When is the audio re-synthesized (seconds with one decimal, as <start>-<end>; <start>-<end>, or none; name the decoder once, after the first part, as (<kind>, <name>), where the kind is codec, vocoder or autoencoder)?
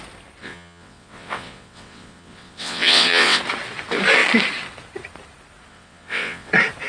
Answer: 0.4-3.4 (vocoder, WaveNeXt); 5.7-6.5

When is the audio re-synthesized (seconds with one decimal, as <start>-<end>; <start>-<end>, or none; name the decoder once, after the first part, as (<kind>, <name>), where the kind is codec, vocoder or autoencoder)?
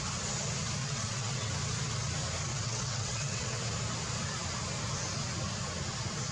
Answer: 0.8-1.5 (vocoder, WaveNeXt); 2.5-3.6